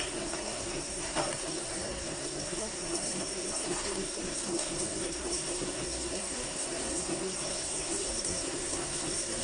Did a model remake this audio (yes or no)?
yes